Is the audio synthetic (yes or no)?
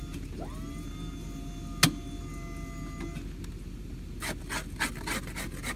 no